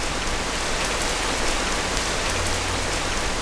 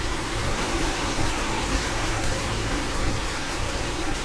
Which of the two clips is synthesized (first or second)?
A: second